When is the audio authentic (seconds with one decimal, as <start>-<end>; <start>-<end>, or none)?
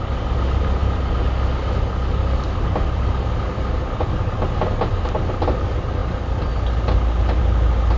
0.0-8.0